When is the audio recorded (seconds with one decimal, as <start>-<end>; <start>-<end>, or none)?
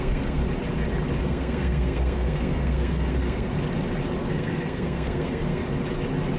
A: 0.4-1.2; 3.5-4.3; 5.6-6.4